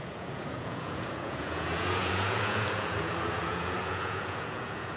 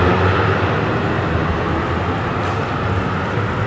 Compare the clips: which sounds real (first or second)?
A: second